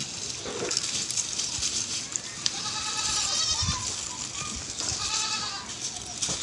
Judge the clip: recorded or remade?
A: recorded